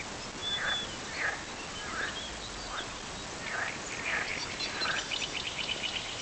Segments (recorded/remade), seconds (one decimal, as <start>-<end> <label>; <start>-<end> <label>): 0.0-6.2 recorded